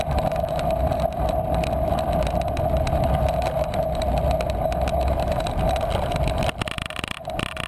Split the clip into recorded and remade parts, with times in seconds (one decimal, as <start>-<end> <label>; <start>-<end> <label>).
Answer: 0.0-7.7 recorded